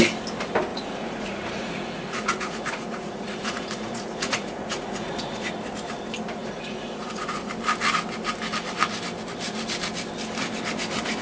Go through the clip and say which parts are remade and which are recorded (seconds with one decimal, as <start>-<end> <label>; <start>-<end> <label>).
0.0-0.7 recorded; 0.7-5.5 remade; 5.5-6.4 recorded; 6.4-7.5 remade; 7.5-11.2 recorded